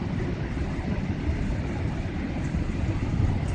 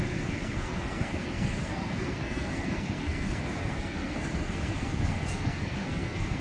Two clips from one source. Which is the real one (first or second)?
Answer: first